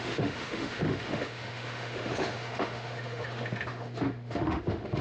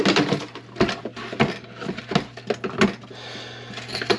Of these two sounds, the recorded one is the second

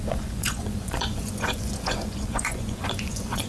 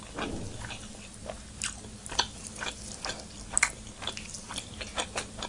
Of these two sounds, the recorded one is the second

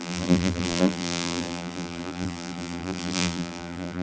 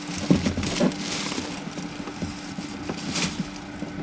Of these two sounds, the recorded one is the second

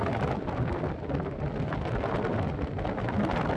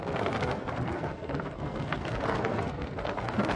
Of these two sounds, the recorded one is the first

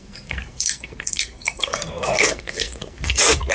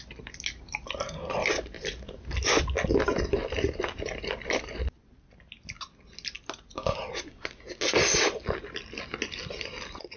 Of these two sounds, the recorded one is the second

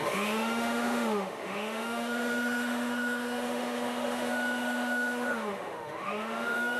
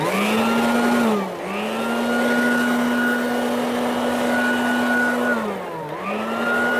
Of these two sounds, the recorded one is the second